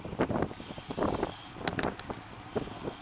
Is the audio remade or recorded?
recorded